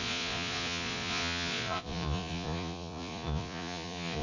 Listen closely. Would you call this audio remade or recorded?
remade